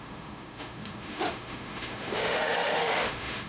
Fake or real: fake